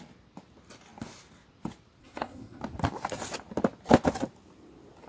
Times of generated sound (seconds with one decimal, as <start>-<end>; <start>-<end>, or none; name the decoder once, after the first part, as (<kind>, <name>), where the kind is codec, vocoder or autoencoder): 2.0-2.6 (codec, SNAC)